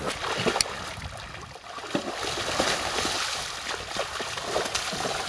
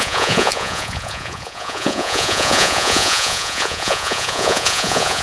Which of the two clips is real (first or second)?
first